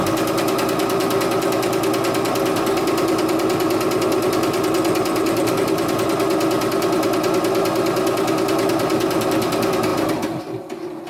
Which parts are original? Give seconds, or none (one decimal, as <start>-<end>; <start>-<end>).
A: 0.0-11.1